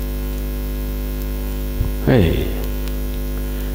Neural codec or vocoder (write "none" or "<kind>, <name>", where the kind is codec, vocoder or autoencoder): none